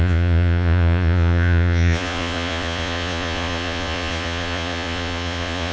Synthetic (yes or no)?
yes